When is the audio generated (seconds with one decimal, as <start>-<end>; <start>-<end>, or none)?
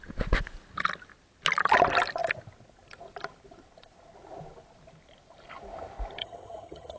6.2-7.0